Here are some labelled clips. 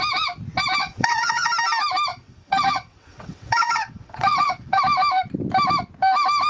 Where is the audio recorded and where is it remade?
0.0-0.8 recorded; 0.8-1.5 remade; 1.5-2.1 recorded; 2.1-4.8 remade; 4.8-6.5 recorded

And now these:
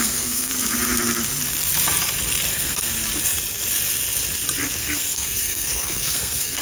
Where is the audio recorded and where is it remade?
0.0-0.5 remade; 0.5-2.5 recorded; 2.5-2.9 remade; 2.9-4.8 recorded; 4.8-6.6 remade

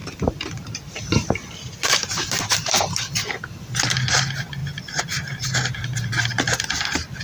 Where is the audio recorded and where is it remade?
0.0-3.5 remade; 3.5-7.2 recorded

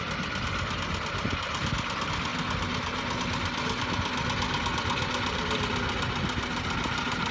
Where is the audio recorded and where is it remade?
0.0-7.3 recorded

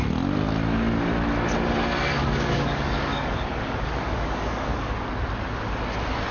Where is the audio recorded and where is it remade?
0.0-2.2 recorded; 2.2-4.9 remade; 4.9-6.3 recorded

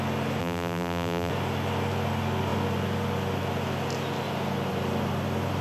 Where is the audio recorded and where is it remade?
0.0-0.4 recorded; 0.4-1.3 remade; 1.3-5.6 recorded

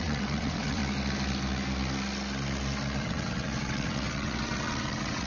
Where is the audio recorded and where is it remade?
0.0-0.8 remade; 0.8-3.0 recorded; 3.0-5.3 remade

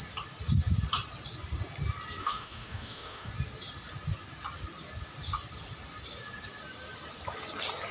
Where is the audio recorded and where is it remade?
0.0-2.2 recorded; 2.2-3.3 remade; 3.3-7.9 recorded